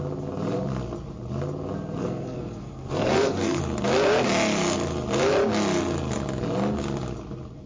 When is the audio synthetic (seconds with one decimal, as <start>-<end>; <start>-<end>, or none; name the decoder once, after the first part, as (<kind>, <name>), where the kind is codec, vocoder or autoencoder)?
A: 2.0-3.6 (codec, SNAC)